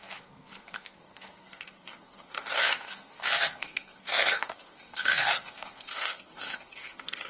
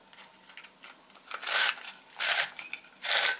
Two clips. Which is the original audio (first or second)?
second